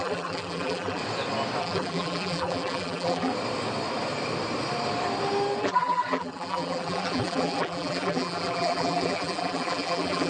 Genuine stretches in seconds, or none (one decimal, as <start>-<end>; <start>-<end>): 1.0-1.6; 3.3-5.6